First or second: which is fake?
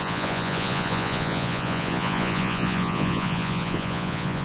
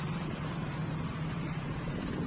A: first